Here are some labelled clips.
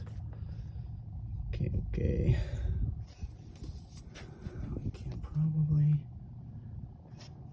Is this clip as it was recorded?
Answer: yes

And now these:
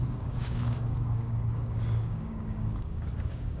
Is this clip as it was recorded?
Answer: no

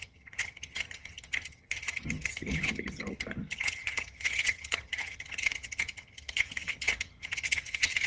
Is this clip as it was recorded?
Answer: no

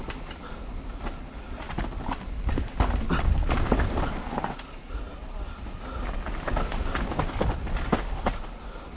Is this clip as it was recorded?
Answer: yes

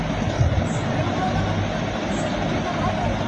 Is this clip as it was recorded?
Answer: yes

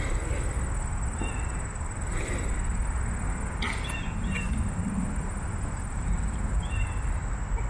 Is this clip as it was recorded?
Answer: yes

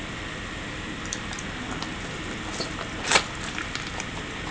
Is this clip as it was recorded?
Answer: yes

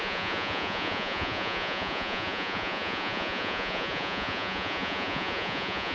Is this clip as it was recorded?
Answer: no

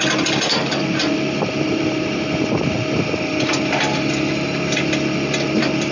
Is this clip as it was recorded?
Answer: yes